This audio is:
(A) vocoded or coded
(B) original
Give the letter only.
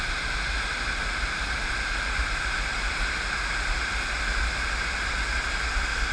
B